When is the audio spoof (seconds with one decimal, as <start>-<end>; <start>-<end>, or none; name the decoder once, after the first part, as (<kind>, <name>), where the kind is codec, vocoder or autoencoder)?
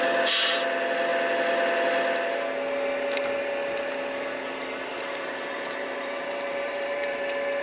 4.9-7.1 (vocoder, BigVGAN v2)